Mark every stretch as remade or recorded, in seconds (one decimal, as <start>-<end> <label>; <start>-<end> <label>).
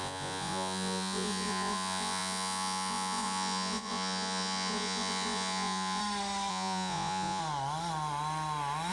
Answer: 0.0-6.0 remade; 6.0-6.5 recorded; 6.5-7.4 remade; 7.4-8.9 recorded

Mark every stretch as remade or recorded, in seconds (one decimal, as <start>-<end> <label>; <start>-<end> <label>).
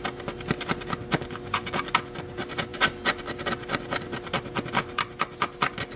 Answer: 0.0-6.0 recorded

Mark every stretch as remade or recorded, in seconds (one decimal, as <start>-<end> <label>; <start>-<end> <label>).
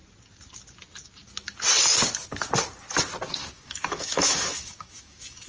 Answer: 0.0-3.4 recorded; 3.4-5.5 remade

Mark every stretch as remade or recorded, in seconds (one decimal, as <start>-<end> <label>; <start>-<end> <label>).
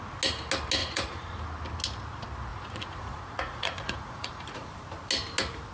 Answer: 0.0-0.8 recorded; 0.8-1.4 remade; 1.4-2.5 recorded; 2.5-4.8 remade; 4.8-5.7 recorded